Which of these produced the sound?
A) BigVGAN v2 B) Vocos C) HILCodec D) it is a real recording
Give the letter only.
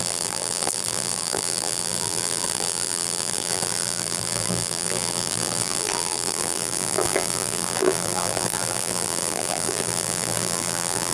A